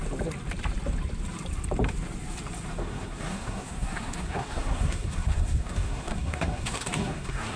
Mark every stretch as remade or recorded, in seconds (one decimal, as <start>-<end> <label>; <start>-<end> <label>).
0.0-2.8 recorded; 2.8-7.6 remade